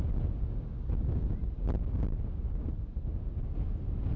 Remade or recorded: recorded